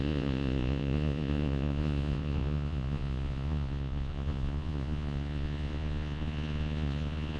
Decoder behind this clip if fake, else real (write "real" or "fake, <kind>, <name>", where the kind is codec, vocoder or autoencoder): fake, vocoder, Vocos